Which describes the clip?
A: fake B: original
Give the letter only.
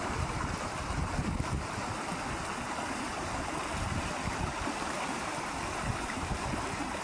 A